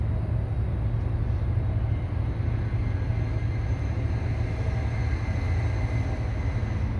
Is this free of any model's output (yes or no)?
yes